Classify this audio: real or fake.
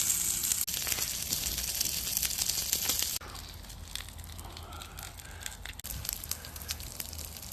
real